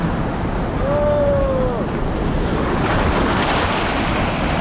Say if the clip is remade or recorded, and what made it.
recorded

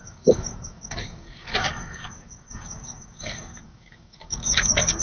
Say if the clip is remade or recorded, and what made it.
remade, codec, DAC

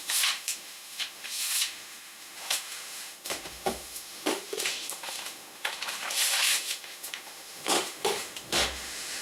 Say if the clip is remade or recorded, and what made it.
remade, autoencoder, DAC-VAE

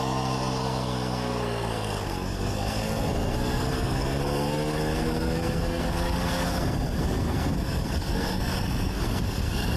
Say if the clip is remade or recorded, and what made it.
remade, codec, SNAC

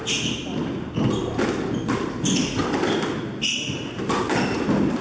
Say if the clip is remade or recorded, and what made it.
recorded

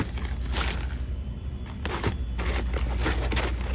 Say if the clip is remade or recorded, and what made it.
recorded